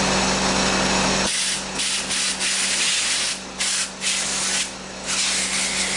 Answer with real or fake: real